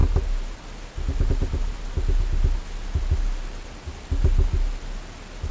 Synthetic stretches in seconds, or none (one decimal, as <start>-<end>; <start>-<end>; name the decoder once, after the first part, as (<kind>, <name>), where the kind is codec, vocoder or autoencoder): none